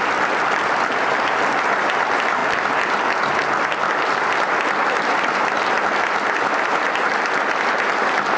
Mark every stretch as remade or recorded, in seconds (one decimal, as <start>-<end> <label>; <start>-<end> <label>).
0.0-8.4 recorded